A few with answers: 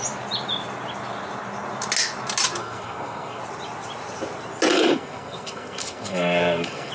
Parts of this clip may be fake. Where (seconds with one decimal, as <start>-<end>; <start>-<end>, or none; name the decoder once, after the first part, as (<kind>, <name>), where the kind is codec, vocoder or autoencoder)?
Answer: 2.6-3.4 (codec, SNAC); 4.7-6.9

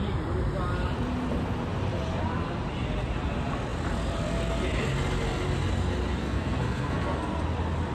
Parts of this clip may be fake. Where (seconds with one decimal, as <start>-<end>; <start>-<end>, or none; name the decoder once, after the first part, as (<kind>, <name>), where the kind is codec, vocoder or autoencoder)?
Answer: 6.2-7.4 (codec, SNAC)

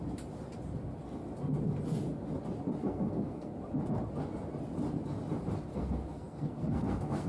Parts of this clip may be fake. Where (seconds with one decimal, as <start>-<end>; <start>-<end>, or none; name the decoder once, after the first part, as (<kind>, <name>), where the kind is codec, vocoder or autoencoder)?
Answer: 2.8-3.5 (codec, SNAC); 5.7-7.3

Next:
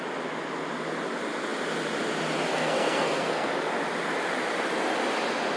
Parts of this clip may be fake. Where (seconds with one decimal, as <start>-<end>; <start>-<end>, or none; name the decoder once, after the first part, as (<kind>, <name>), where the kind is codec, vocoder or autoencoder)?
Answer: 2.5-3.5 (codec, SNAC)

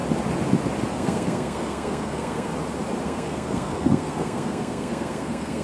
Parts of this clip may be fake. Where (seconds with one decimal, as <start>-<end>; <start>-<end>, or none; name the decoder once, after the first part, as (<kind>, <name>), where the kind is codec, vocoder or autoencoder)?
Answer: 0.9-2.5 (codec, SNAC); 3.0-5.6

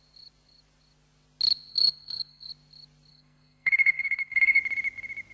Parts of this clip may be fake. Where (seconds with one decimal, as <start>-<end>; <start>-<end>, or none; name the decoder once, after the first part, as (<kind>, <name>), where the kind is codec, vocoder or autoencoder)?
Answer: 1.7-2.5 (codec, SNAC); 3.1-4.6

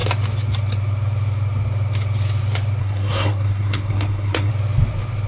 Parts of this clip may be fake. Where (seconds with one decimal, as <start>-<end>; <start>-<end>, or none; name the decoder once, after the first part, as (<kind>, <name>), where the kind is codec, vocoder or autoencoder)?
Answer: 2.8-4.5 (codec, SNAC)

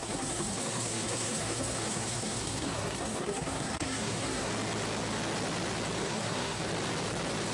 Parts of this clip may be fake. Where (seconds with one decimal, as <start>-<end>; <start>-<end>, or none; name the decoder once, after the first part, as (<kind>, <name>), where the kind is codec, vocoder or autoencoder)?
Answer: 0.0-4.5 (codec, SNAC); 6.0-6.6